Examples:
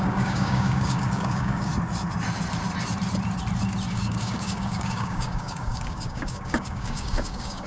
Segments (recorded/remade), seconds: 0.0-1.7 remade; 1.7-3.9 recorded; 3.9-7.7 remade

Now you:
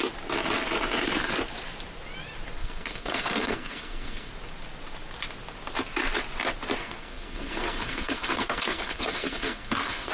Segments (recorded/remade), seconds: 0.0-2.6 recorded; 2.6-4.3 remade; 4.3-6.8 recorded; 6.8-10.1 remade

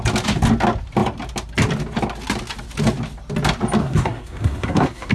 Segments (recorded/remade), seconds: 0.0-3.8 recorded; 3.8-5.1 remade

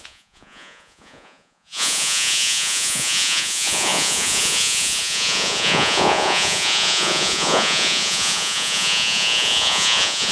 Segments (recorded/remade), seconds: 0.0-10.3 remade

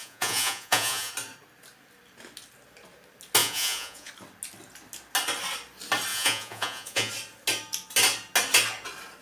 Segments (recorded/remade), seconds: 0.0-1.1 remade; 1.1-3.4 recorded; 3.4-4.1 remade; 4.1-6.1 recorded; 6.1-7.1 remade; 7.1-9.2 recorded

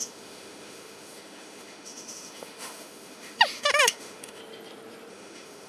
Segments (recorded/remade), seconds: 0.0-4.4 remade; 4.4-5.1 recorded; 5.1-5.7 remade

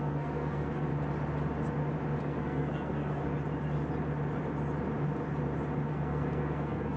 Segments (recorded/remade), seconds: 0.0-0.9 remade; 0.9-2.2 recorded; 2.2-3.2 remade; 3.2-5.9 recorded; 5.9-7.0 remade

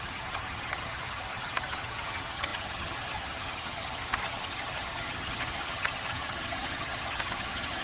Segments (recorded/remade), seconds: 0.0-7.8 remade